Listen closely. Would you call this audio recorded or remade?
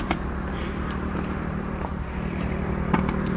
remade